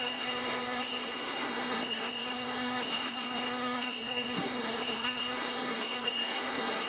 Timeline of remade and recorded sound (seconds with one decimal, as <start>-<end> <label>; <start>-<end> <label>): 0.0-6.9 remade